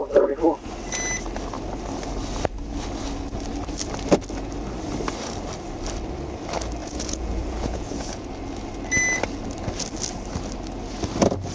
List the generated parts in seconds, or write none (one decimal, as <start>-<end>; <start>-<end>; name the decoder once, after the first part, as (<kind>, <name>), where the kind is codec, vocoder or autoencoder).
6.8-8.3 (vocoder, Vocos)